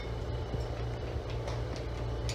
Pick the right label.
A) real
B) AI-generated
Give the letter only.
A